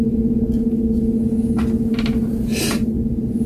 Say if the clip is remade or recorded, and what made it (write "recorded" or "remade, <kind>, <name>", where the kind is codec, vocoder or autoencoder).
recorded